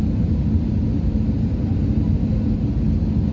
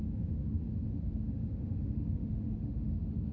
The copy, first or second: second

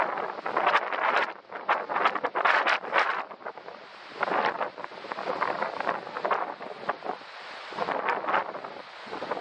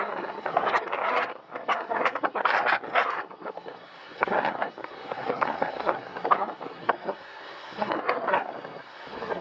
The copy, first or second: second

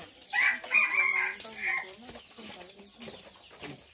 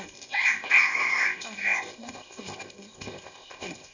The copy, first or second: second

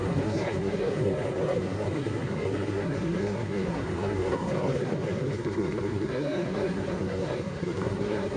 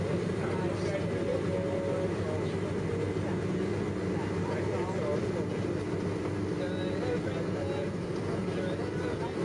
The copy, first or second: first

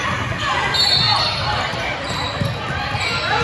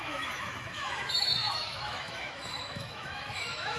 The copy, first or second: second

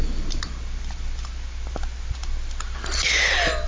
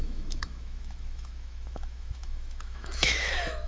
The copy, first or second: second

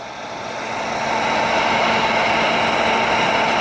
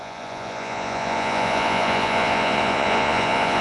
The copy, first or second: second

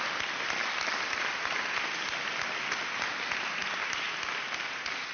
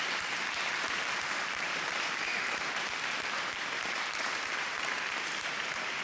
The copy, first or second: second